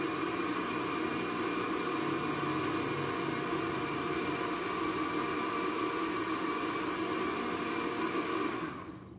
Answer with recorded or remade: recorded